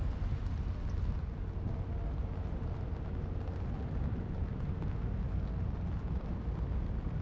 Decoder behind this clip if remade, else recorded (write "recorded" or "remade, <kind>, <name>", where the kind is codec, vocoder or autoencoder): recorded